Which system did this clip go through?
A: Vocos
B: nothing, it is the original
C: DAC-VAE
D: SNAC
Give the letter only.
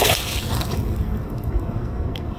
D